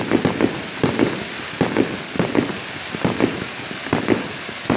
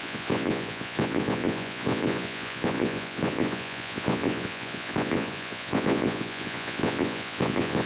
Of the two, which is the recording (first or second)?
first